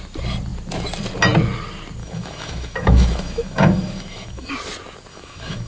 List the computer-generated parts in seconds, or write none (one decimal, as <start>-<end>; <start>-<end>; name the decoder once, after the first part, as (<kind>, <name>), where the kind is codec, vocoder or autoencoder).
2.0-4.5 (autoencoder, DAC-VAE); 5.1-5.7